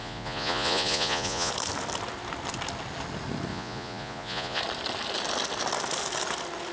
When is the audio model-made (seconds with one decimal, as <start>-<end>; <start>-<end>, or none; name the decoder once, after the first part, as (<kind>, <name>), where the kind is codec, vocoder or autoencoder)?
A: 0.0-1.5 (vocoder, Vocos); 3.5-4.6